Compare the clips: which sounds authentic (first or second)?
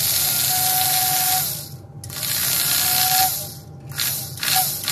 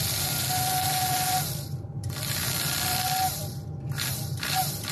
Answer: first